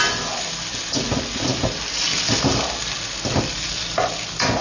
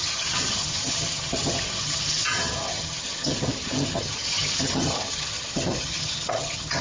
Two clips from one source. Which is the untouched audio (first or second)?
first